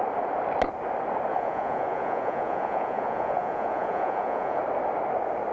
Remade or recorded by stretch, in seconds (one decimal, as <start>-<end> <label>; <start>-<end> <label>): 0.0-1.3 recorded; 1.3-4.6 remade; 4.6-5.5 recorded